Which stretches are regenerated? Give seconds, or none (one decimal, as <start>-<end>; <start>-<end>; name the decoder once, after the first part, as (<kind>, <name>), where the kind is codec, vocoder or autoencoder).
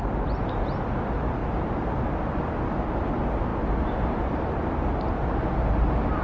none